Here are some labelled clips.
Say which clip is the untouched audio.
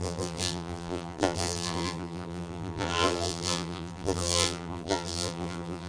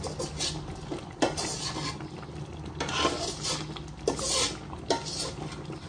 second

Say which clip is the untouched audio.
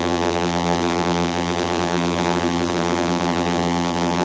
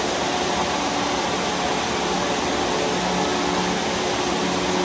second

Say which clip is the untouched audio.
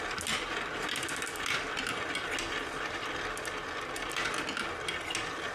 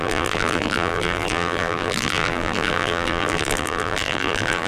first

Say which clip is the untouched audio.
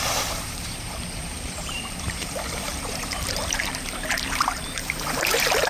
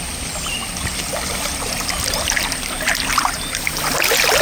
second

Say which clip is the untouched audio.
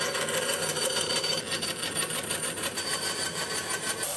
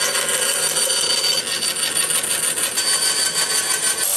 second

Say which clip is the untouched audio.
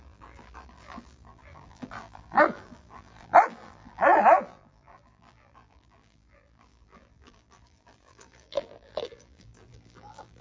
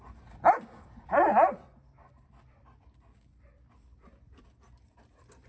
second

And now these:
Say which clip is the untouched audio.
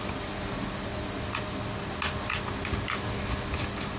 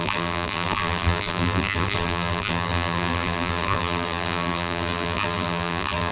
first